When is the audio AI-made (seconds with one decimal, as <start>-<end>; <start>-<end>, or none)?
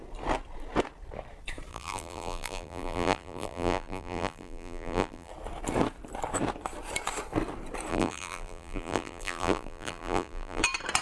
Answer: 1.7-5.3; 7.9-10.6